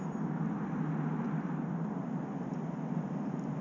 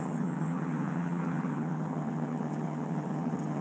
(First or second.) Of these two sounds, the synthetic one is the second